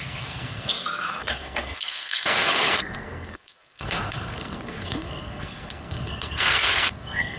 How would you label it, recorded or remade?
remade